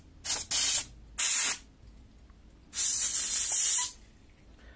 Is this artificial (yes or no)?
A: no